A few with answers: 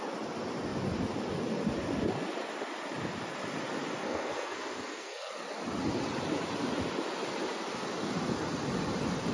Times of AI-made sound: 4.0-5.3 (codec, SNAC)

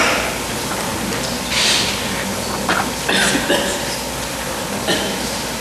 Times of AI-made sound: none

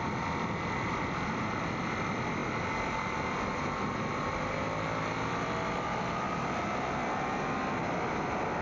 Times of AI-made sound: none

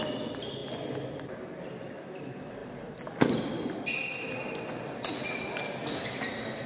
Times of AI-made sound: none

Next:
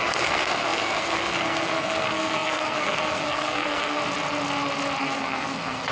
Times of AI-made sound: 0.0-4.0 (codec, SNAC); 5.0-5.9

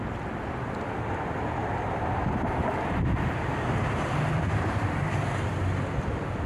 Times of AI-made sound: 1.6-5.5 (vocoder, BigVGAN v2)

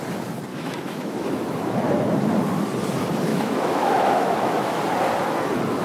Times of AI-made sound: 0.5-1.8 (autoencoder, DAC-VAE); 3.3-4.8